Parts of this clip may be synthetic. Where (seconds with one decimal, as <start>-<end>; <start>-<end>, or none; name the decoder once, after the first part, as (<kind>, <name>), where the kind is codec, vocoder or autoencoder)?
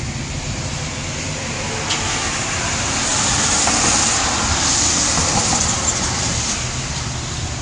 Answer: none